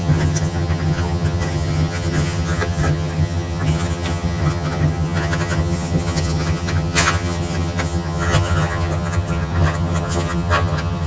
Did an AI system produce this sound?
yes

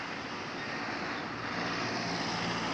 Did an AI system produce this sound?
no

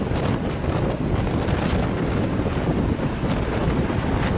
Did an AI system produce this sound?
no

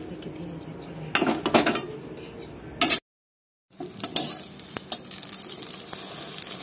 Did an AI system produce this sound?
no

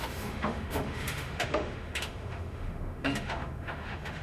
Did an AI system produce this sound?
yes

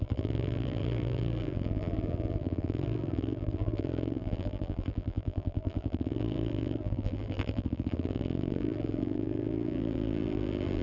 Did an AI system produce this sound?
yes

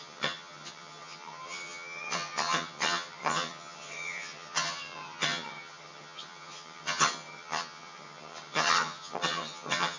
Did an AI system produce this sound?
yes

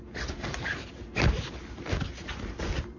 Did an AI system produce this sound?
no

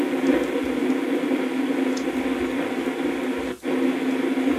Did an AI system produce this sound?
no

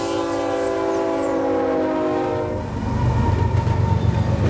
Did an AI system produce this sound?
no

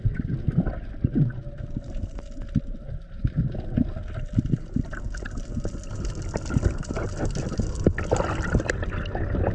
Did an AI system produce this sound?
no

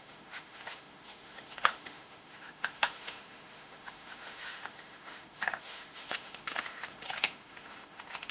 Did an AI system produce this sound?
yes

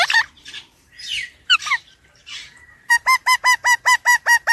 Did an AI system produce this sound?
yes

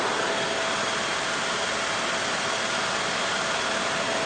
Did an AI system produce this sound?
no